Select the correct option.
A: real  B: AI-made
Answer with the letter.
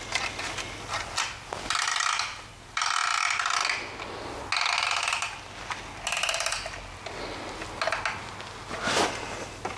A